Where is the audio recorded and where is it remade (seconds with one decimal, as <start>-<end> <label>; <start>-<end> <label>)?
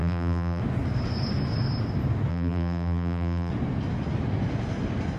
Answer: 0.0-0.6 remade; 0.6-2.3 recorded; 2.3-3.5 remade; 3.5-5.2 recorded